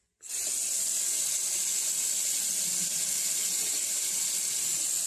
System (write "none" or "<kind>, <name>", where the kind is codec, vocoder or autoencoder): none